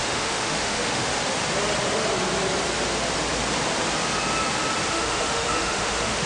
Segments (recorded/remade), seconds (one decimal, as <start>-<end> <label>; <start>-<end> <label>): 0.0-1.1 remade; 1.1-4.9 recorded; 4.9-6.3 remade